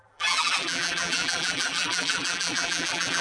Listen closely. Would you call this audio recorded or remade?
remade